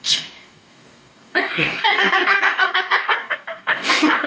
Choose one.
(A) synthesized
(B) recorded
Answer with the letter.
A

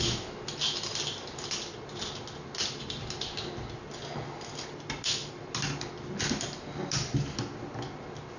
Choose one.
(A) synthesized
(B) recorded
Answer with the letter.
B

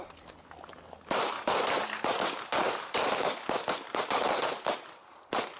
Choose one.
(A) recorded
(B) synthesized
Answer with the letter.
A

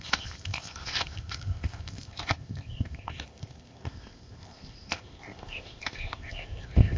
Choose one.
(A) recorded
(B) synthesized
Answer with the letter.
B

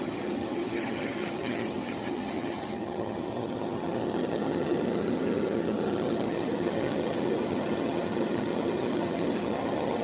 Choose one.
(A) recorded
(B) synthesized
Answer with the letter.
B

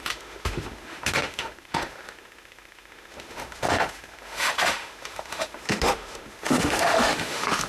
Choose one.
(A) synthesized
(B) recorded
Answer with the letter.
A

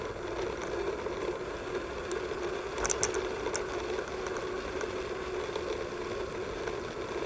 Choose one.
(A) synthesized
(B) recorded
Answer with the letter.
B